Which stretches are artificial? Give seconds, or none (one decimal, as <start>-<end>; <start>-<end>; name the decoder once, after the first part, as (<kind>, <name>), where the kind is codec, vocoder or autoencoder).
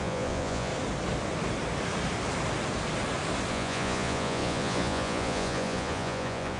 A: 0.0-0.7 (vocoder, Vocos); 3.5-6.6